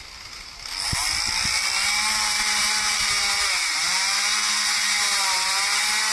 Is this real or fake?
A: real